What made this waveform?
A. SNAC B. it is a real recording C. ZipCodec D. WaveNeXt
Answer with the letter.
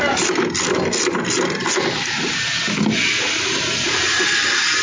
B